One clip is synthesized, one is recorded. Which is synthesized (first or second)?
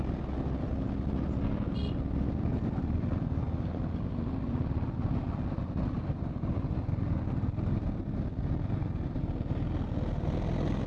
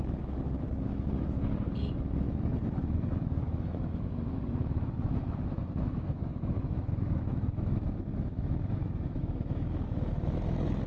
second